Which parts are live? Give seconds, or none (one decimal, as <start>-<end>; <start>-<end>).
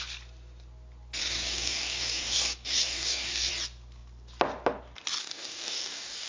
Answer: 0.0-1.2; 3.5-5.2